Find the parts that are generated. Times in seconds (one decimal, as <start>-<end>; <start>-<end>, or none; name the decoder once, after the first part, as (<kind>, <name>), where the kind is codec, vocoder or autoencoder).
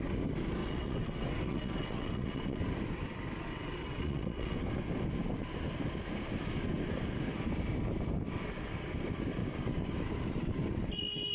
0.6-2.6 (vocoder, WaveNeXt); 3.5-4.6